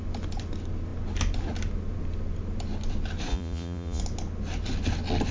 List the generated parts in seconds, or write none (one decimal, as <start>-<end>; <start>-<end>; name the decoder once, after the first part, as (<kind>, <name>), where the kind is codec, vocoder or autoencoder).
3.3-4.0 (vocoder, Vocos)

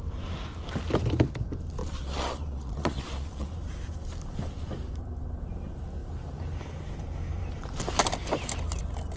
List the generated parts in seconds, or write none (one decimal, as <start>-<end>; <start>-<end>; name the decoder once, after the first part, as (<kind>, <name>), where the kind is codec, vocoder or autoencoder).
1.8-3.5 (vocoder, Vocos)

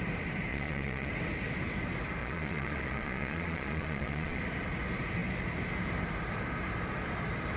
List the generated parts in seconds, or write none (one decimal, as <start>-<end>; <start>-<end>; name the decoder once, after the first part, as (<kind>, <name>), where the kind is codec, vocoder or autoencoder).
0.5-1.1 (vocoder, Vocos); 2.2-4.4

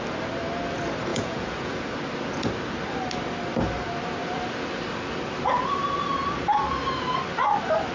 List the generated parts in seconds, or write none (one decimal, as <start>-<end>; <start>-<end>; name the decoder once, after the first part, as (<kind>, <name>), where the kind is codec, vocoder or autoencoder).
1.1-1.8 (vocoder, Vocos)

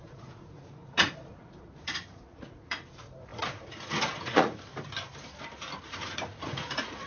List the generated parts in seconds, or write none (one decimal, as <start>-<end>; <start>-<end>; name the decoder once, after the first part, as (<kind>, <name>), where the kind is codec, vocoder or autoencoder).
0.0-4.7 (vocoder, Vocos); 5.8-7.1

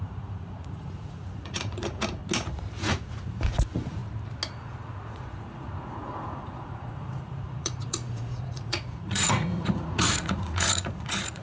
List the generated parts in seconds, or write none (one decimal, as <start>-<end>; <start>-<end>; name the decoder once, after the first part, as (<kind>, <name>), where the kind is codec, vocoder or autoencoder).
0.0-2.2 (vocoder, Vocos); 2.8-4.0; 4.5-11.4